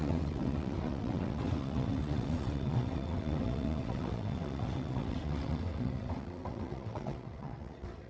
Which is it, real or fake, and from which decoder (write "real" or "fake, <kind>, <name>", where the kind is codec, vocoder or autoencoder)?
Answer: fake, vocoder, WaveNeXt